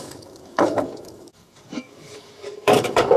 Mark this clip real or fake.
fake